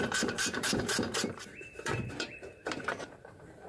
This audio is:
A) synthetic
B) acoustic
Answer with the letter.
A